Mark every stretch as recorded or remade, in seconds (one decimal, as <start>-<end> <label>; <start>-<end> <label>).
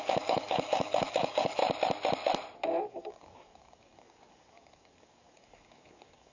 0.0-1.6 remade; 1.6-2.9 recorded; 2.9-6.3 remade